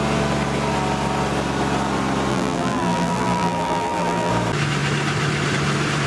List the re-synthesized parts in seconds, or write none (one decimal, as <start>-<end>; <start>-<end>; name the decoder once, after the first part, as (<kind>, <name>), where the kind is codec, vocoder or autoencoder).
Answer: 2.3-4.3 (vocoder, BigVGAN v2)